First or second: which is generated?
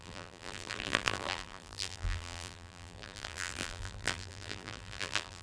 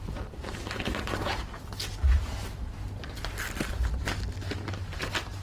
first